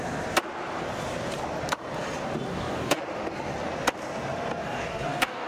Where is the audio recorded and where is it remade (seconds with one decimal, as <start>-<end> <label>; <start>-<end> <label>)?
0.0-2.5 recorded; 2.5-3.0 remade; 3.0-4.6 recorded; 4.6-5.5 remade